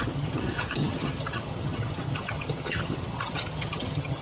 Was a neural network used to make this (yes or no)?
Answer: yes